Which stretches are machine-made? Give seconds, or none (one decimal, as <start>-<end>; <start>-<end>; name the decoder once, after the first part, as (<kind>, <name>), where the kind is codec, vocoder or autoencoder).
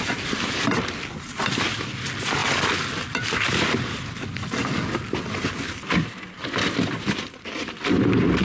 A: none